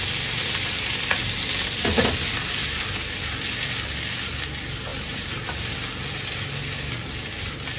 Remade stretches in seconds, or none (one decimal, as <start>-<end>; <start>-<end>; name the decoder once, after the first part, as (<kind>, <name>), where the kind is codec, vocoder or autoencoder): 4.9-5.7 (vocoder, BigVGAN v2)

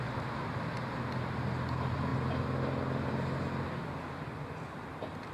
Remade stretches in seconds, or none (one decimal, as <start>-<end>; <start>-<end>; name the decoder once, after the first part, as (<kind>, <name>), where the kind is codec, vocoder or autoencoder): none

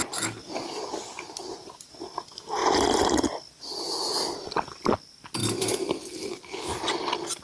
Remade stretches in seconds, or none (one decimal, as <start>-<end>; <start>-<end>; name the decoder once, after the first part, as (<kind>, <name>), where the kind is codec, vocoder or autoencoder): none

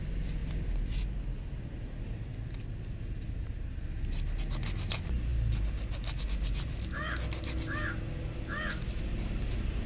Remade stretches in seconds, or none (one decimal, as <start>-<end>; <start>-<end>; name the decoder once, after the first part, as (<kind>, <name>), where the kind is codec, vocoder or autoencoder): none

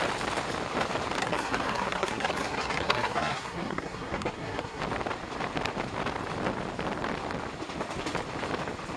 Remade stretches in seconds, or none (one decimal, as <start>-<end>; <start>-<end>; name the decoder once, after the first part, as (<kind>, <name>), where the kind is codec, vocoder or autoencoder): 1.2-4.8 (codec, SNAC)

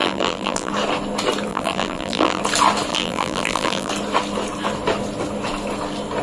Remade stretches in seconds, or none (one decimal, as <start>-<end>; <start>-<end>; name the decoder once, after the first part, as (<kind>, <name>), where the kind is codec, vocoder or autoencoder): 0.0-0.7 (vocoder, BigVGAN v2); 1.5-2.4; 2.9-3.9

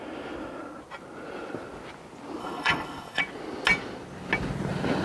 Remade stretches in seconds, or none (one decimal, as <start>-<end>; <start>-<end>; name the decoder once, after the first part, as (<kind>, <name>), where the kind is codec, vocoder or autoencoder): 2.4-3.2 (codec, HILCodec)

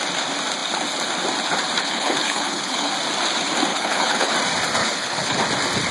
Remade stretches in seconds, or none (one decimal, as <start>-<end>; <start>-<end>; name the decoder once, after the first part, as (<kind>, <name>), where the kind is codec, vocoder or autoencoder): 1.8-2.9 (codec, HILCodec); 3.7-4.3; 4.8-5.4